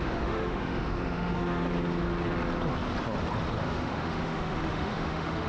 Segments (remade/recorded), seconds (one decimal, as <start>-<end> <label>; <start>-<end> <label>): 0.0-1.7 remade; 1.7-3.6 recorded; 3.6-5.5 remade